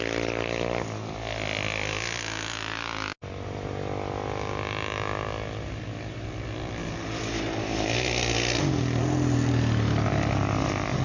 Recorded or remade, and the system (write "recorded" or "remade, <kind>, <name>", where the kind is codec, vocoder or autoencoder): recorded